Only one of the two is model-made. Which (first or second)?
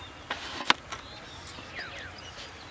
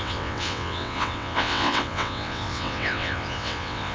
second